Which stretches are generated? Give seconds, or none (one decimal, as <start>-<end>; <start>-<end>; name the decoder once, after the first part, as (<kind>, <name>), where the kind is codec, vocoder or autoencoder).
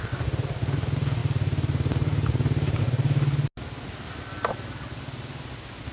1.2-2.8 (vocoder, BigVGAN v2)